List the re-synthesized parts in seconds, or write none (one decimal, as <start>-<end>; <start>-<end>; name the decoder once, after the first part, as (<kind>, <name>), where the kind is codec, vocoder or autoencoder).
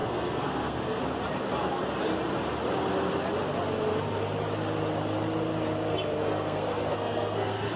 0.0-1.0 (codec, SNAC); 6.2-7.8